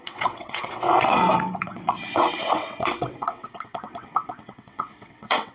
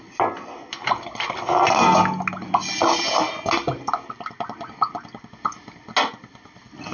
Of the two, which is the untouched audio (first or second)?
second